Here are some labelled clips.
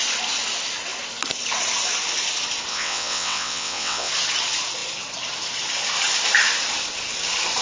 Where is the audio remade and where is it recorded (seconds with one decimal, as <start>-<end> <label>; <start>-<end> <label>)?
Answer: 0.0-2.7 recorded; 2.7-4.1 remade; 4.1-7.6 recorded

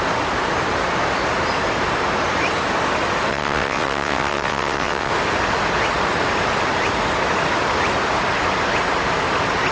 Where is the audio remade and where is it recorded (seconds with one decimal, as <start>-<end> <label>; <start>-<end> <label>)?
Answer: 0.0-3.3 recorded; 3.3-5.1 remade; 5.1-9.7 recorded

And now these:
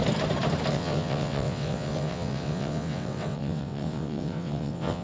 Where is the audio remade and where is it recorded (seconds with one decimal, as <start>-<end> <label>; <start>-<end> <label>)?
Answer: 0.0-0.7 recorded; 0.7-5.0 remade

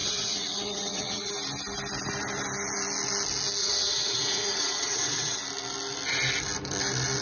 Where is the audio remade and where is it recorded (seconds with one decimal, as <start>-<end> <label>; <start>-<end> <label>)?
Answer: 0.0-1.3 remade; 1.3-3.6 recorded; 3.6-5.4 remade; 5.4-7.2 recorded

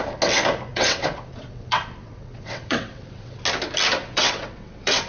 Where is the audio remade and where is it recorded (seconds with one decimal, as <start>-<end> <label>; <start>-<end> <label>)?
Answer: 0.0-0.7 recorded; 0.7-3.4 remade; 3.4-4.0 recorded; 4.0-5.1 remade

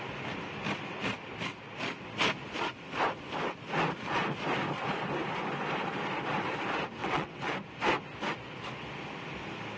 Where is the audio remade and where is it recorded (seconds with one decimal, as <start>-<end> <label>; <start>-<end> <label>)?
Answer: 0.0-7.0 recorded; 7.0-7.5 remade; 7.5-9.8 recorded

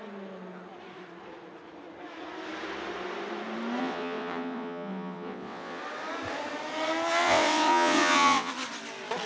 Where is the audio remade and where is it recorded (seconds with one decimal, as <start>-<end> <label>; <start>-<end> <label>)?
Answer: 0.0-3.8 recorded; 3.8-5.8 remade; 5.8-7.2 recorded; 7.2-8.5 remade; 8.5-9.3 recorded

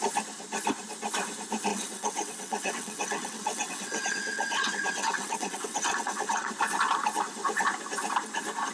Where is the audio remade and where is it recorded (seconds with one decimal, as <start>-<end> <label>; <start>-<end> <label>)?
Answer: 0.0-1.7 recorded; 1.7-6.5 remade; 6.5-8.7 recorded